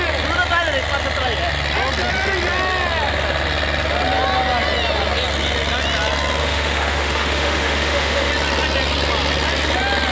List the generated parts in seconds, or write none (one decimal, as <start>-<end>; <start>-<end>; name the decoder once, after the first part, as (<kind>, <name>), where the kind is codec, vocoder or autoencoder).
6.4-8.3 (autoencoder, DAC-VAE)